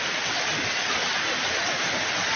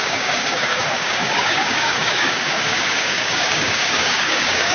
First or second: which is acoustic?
first